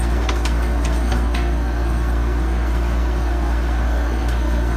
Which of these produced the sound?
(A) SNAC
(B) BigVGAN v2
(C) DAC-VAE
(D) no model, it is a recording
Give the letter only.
A